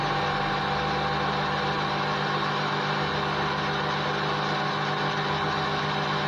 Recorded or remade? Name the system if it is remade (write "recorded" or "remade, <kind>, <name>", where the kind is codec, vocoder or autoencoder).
recorded